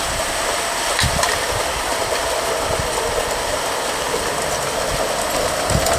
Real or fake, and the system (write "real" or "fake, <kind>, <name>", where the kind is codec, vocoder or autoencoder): real